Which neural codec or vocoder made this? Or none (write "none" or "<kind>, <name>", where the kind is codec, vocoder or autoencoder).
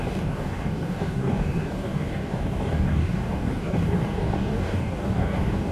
codec, DAC